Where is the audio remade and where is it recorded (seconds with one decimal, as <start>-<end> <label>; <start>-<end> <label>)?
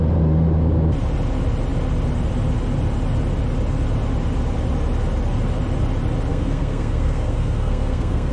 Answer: 0.0-6.3 recorded; 6.3-8.3 remade